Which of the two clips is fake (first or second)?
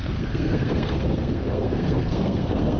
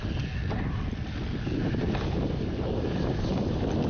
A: first